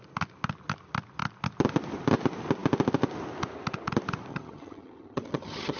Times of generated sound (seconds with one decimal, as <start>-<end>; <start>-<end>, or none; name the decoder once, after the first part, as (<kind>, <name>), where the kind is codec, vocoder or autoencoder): 4.3-5.8 (vocoder, HiFi-GAN)